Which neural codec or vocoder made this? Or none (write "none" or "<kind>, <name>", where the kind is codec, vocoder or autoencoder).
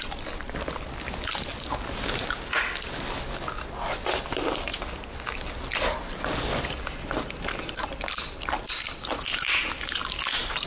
none